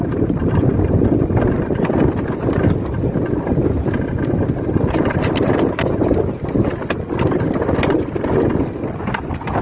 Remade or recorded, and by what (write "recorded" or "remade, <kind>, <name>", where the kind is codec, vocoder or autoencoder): recorded